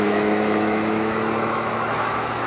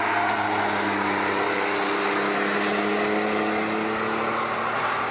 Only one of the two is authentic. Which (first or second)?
second